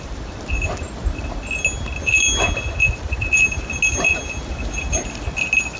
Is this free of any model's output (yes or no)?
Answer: yes